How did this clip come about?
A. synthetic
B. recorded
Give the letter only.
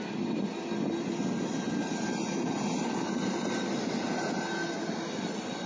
B